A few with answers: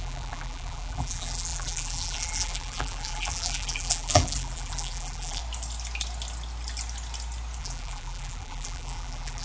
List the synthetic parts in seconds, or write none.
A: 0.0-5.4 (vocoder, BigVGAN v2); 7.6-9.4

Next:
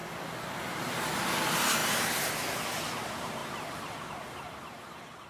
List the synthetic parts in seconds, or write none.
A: 1.8-2.3 (vocoder, BigVGAN v2)

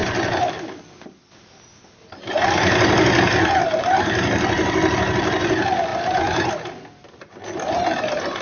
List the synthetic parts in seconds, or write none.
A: none